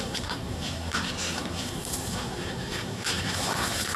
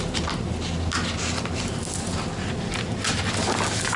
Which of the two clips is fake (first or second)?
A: first